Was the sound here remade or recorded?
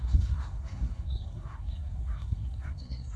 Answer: remade